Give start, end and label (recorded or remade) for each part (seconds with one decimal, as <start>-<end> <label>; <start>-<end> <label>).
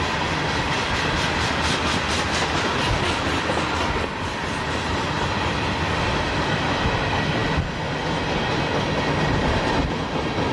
0.0-10.5 recorded